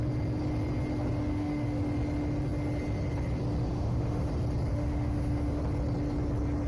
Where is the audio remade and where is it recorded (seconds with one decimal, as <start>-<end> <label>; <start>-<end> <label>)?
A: 0.0-1.3 recorded; 1.3-1.8 remade; 1.8-3.7 recorded; 3.7-4.3 remade; 4.3-4.7 recorded; 4.7-5.6 remade; 5.6-6.7 recorded